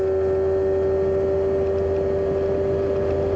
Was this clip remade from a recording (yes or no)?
no